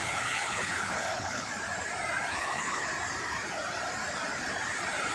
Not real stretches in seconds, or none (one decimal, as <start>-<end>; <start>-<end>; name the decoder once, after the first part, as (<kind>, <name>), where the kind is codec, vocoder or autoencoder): 0.0-1.5 (codec, HILCodec); 2.3-2.9